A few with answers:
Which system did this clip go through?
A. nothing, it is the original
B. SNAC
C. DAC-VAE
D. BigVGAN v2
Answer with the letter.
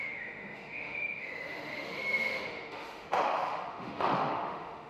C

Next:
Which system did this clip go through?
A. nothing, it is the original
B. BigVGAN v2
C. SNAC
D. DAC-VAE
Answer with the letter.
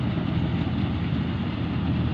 A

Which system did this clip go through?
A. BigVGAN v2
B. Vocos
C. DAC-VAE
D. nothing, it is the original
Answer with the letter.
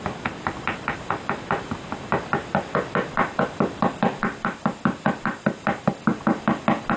D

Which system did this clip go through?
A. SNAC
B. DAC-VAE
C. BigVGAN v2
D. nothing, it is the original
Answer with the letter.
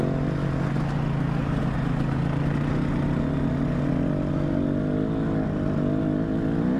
D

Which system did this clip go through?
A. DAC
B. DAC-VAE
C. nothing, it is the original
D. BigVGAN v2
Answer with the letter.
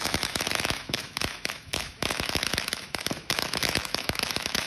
B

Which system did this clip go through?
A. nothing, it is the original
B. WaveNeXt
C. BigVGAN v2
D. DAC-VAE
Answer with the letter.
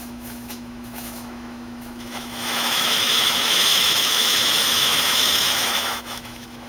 D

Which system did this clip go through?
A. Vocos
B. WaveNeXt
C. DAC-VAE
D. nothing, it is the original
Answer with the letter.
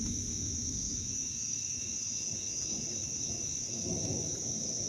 C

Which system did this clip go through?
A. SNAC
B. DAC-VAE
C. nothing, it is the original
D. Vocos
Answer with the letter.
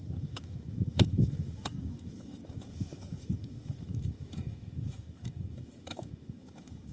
B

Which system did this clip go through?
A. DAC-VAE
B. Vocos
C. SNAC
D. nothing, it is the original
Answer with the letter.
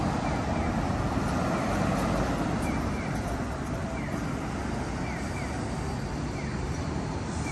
D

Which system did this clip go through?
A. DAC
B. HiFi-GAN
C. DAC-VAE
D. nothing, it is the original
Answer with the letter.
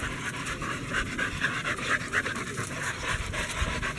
D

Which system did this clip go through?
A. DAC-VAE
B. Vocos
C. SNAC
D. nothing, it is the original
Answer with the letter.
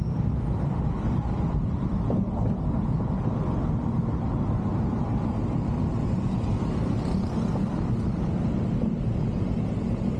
D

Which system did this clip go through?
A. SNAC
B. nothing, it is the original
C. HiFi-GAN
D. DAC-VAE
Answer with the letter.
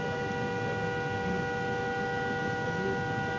B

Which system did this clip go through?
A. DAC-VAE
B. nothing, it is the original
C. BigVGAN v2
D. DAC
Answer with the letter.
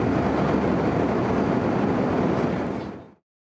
B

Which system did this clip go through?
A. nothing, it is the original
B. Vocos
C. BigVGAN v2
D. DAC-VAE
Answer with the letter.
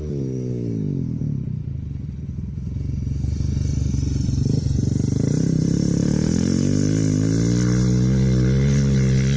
A